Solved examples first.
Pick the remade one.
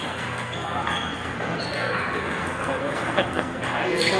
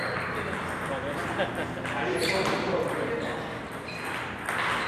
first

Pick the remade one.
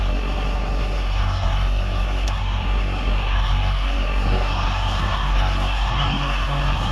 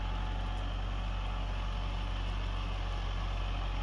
first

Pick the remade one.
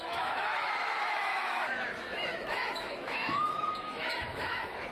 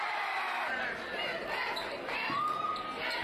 first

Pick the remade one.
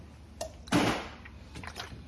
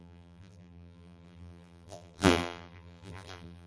second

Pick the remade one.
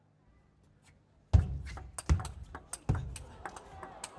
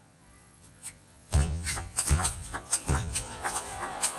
second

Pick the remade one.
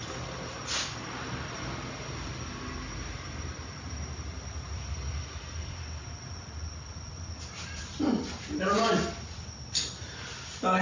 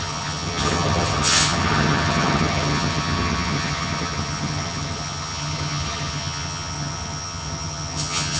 second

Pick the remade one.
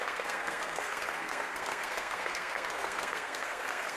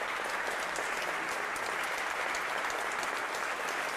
first